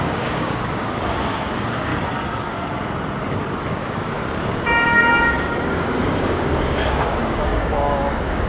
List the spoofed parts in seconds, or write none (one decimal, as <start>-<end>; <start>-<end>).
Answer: 0.0-1.9; 3.7-8.5